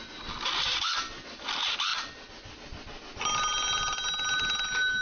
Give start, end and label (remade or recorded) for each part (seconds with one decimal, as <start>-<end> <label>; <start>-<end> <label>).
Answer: 0.0-5.0 recorded